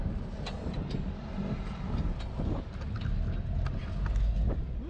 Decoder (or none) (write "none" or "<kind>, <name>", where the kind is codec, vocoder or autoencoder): none